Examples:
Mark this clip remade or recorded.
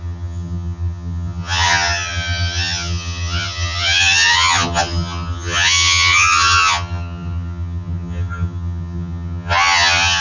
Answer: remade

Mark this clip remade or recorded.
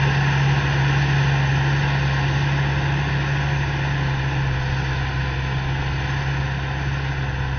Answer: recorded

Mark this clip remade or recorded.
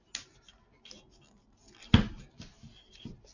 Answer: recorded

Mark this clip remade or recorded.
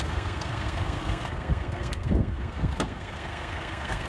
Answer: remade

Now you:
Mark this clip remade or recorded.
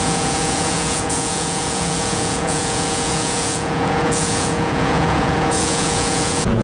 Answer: remade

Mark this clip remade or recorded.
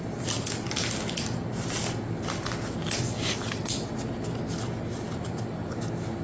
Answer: recorded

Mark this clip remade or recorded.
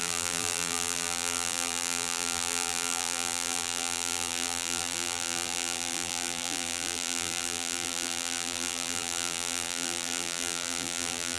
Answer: remade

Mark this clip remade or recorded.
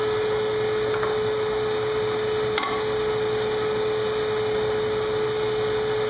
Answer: recorded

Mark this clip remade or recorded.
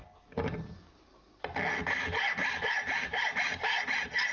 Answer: recorded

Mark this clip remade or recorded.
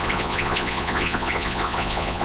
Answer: remade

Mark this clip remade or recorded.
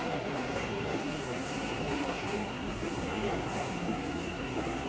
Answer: remade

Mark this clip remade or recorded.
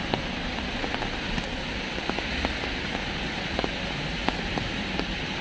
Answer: recorded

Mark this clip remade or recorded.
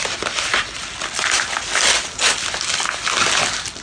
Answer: recorded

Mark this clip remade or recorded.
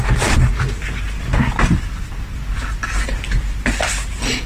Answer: recorded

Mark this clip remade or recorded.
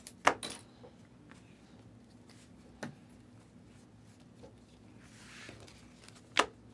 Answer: recorded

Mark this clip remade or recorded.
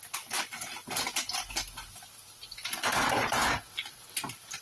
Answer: recorded